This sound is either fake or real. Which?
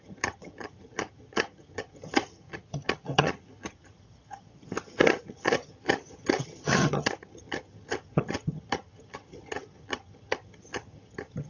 fake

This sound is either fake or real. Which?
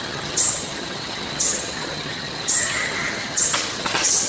fake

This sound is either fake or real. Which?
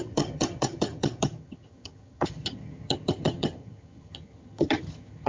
fake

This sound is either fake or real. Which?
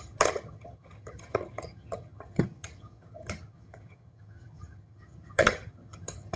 fake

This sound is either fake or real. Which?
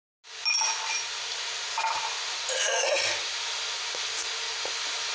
real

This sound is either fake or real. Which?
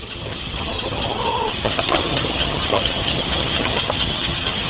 fake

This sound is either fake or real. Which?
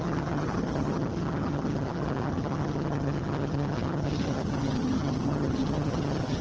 fake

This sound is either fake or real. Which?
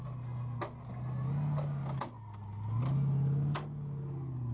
real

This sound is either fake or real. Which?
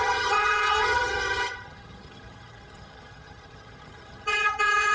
fake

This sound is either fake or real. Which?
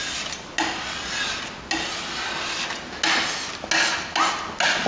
real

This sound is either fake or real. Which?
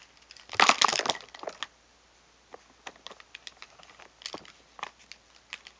real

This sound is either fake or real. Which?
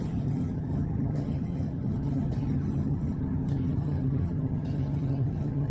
fake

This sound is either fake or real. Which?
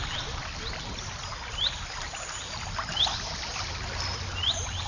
real